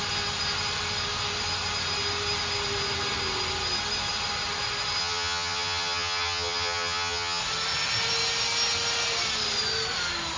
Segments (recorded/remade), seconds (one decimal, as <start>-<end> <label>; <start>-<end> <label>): 0.0-5.0 recorded; 5.0-7.4 remade; 7.4-10.4 recorded